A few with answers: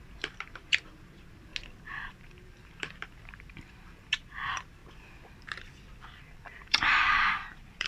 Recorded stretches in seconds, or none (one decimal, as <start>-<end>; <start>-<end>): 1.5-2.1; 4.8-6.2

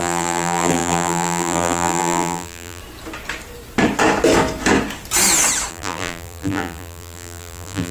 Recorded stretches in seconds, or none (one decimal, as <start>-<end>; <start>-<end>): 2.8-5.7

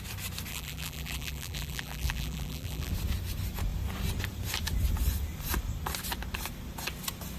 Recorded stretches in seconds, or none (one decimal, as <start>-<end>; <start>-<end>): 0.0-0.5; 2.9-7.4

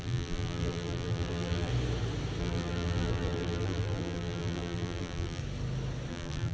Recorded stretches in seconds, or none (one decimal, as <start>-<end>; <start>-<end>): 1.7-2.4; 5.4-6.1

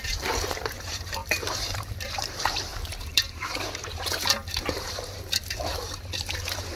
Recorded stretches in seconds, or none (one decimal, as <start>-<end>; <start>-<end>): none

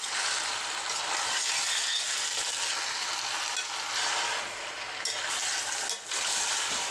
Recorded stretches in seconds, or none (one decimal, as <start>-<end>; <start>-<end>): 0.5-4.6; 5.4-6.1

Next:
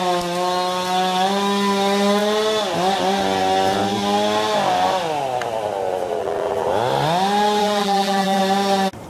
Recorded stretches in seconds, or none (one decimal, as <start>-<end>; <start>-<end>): 0.0-6.2; 6.7-7.6; 8.4-9.1

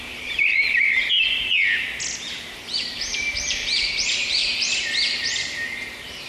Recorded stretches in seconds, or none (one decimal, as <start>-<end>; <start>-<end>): 1.0-2.3; 4.4-5.8